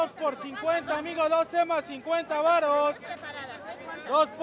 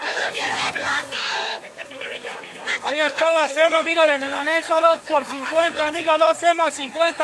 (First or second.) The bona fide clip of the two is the first